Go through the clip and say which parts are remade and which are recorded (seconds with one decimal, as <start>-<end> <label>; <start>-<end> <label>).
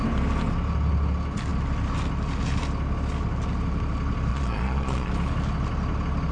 0.0-4.3 recorded; 4.3-5.1 remade; 5.1-6.3 recorded